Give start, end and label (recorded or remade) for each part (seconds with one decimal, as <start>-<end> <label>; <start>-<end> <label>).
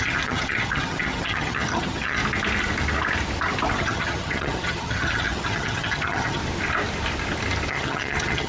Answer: 0.0-2.2 remade; 2.2-3.8 recorded; 3.8-6.4 remade; 6.4-7.7 recorded; 7.7-8.5 remade